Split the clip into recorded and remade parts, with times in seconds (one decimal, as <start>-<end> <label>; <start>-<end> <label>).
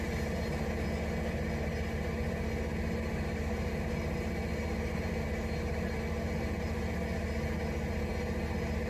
0.0-8.9 recorded